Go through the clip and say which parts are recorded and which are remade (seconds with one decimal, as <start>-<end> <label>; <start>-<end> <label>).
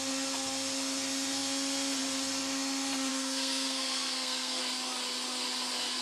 0.0-3.1 recorded; 3.1-4.6 remade; 4.6-6.0 recorded